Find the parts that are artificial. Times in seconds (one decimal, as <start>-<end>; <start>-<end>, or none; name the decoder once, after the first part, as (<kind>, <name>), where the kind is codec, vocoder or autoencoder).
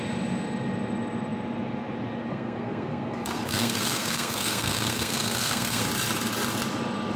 2.3-5.8 (codec, SNAC)